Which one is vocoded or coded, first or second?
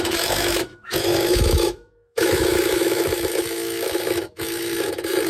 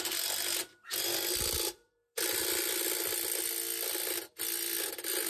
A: first